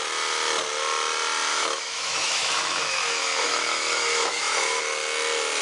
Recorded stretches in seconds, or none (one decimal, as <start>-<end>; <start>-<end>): 0.0-1.5; 4.8-5.6